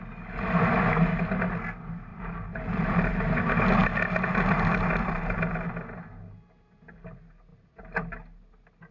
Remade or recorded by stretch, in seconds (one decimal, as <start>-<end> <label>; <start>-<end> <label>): 0.0-2.1 recorded; 2.1-3.1 remade; 3.1-3.8 recorded; 3.8-5.7 remade; 5.7-8.9 recorded